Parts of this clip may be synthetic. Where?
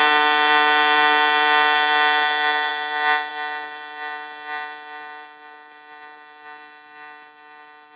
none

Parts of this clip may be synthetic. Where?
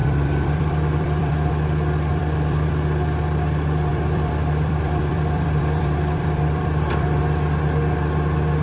0.0-1.5 (vocoder, BigVGAN v2); 2.1-2.7; 3.9-7.2